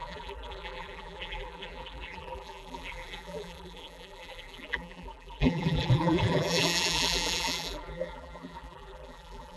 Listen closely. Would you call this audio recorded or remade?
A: remade